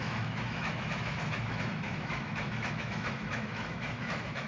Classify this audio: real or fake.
fake